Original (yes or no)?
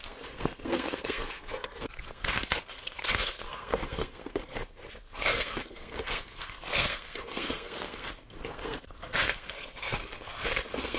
no